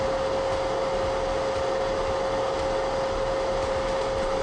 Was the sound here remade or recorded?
recorded